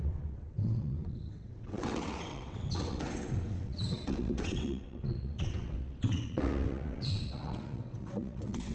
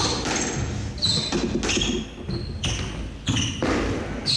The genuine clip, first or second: second